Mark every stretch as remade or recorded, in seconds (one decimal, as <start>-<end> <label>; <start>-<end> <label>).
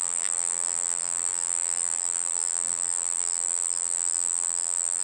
0.0-5.0 remade